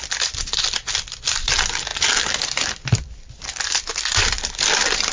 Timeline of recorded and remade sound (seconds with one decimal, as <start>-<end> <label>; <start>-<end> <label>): 0.0-5.1 remade